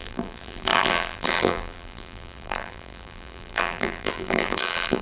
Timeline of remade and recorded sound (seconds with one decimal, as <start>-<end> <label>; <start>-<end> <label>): 0.0-5.0 remade